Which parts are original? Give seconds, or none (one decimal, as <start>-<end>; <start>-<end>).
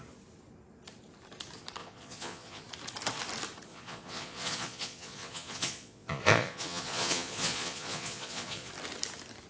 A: 0.0-1.8; 2.6-3.7; 8.7-9.5